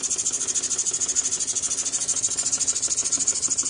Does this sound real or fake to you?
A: real